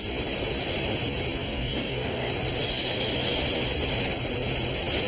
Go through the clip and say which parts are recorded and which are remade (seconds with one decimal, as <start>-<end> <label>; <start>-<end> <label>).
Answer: 0.0-1.4 recorded; 1.4-2.3 remade; 2.3-5.1 recorded